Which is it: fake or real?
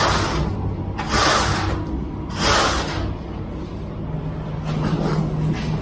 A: real